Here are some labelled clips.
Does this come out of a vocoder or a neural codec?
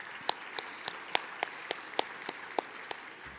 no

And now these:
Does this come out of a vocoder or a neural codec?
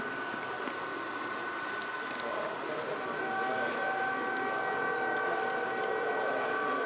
no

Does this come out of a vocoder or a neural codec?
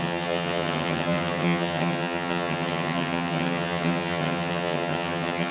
yes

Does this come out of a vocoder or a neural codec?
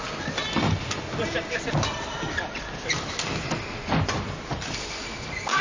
no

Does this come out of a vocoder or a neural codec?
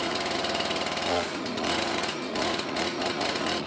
yes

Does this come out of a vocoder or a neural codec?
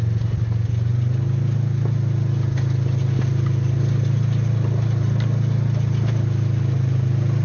no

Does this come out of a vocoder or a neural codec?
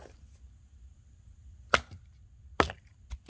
no